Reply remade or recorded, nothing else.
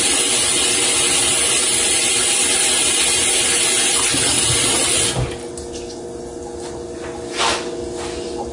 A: recorded